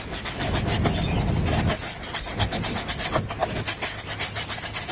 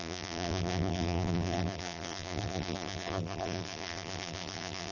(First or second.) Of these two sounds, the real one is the first